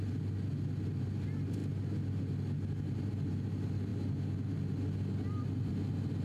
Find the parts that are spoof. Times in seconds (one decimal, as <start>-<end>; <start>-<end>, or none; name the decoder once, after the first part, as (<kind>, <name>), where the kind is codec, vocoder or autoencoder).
none